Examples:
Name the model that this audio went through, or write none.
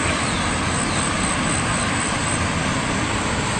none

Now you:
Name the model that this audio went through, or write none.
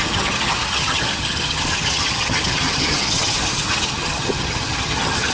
vocoder, HiFi-GAN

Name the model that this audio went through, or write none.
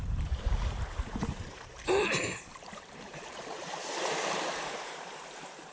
vocoder, BigVGAN v2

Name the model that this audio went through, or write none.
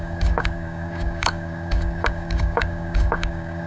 codec, DAC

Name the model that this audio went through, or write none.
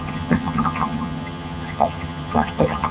vocoder, HiFi-GAN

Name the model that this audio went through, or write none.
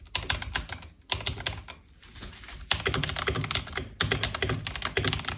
none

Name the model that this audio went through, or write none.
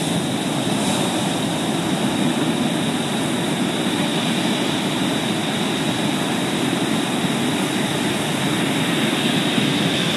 none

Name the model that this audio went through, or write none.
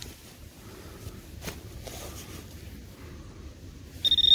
none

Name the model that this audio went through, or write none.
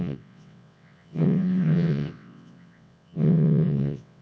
vocoder, WaveNeXt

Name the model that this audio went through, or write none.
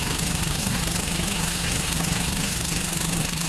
codec, SNAC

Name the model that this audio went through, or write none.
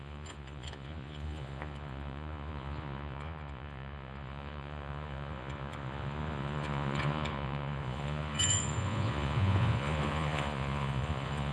vocoder, Vocos